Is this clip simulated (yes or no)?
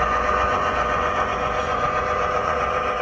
yes